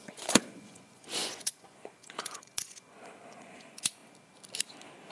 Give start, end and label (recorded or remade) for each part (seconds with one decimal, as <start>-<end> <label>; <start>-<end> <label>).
0.0-4.0 remade; 4.0-5.1 recorded